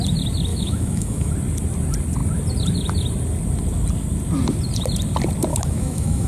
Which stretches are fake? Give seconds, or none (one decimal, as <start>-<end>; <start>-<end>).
0.5-1.3; 5.5-6.3

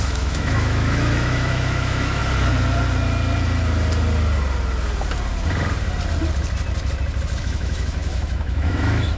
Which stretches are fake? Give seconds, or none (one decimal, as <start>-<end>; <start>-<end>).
0.0-2.2; 7.4-9.2

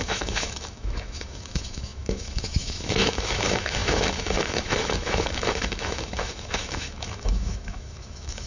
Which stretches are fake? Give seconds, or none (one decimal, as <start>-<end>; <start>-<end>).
0.0-8.5

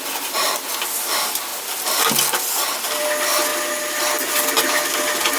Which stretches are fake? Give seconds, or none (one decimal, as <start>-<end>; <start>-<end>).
none

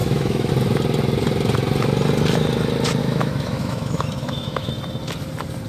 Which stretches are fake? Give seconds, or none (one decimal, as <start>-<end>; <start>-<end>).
0.0-0.5; 3.0-4.7

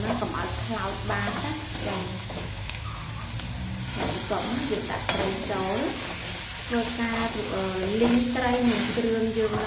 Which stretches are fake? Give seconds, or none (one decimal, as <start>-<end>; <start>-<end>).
2.0-3.1

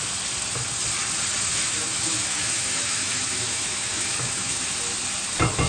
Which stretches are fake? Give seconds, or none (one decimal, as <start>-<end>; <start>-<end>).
1.5-4.6